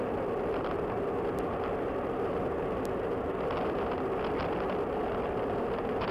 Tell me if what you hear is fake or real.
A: real